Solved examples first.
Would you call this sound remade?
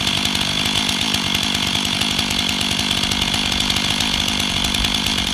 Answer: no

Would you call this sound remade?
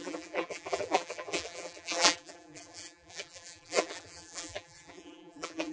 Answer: yes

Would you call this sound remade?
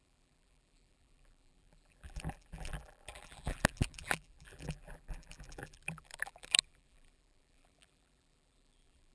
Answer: yes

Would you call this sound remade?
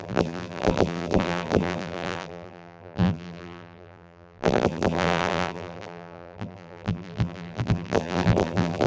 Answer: yes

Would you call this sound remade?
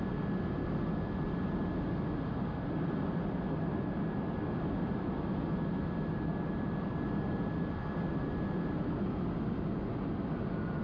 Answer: no